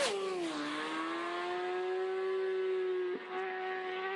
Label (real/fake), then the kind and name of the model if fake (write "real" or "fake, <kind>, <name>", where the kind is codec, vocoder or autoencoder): real